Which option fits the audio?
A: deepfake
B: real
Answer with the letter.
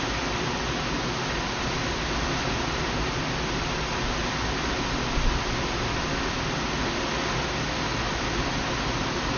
B